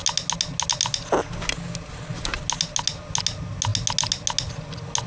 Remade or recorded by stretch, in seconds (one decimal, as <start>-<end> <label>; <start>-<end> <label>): 0.0-5.1 recorded